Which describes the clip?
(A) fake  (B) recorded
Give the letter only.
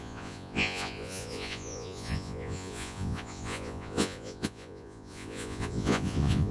A